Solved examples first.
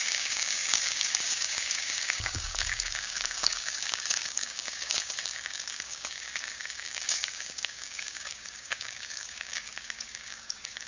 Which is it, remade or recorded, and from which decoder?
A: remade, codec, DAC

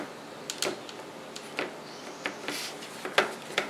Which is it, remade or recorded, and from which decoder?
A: recorded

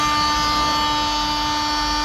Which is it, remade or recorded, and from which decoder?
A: recorded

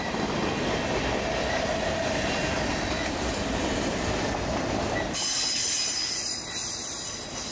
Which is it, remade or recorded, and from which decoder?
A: recorded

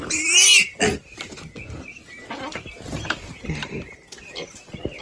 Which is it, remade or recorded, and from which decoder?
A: recorded